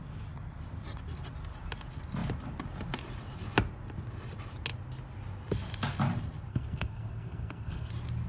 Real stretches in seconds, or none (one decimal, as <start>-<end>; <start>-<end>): 0.0-6.5; 7.9-8.3

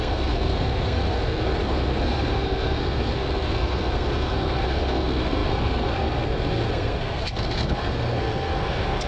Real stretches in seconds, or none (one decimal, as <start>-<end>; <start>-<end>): none

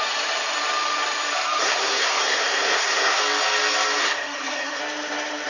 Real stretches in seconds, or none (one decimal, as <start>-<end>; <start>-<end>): 0.0-1.6; 3.2-4.0; 4.8-5.5

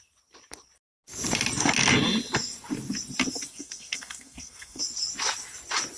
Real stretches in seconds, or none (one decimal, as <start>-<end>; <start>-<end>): 0.0-3.5; 4.8-6.0

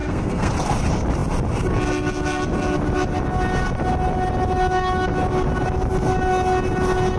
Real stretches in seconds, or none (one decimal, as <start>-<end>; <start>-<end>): 0.5-7.2

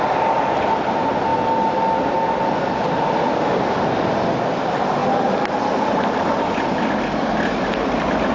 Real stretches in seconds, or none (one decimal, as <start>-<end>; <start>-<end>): 0.0-8.3

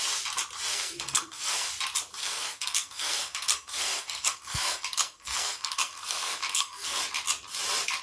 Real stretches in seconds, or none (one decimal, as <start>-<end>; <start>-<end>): 0.0-0.7; 1.7-2.2; 7.0-8.0